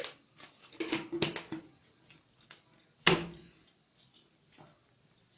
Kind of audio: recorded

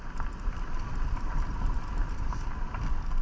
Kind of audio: remade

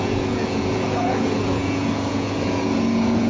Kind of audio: remade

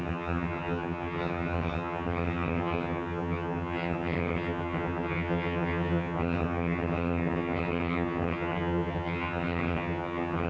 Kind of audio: remade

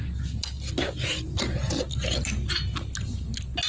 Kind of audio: recorded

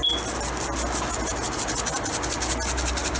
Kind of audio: recorded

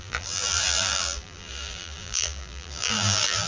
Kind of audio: remade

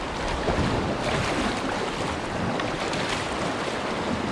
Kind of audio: recorded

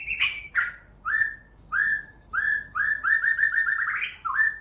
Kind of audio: recorded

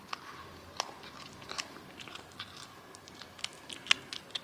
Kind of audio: recorded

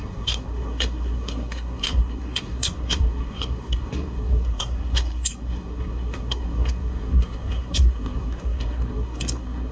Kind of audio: remade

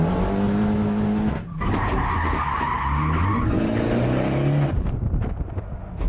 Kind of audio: recorded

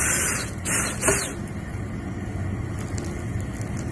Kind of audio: recorded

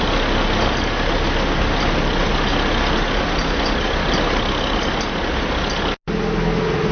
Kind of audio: recorded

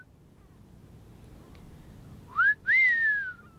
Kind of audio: recorded